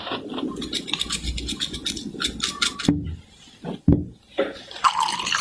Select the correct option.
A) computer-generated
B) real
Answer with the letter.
B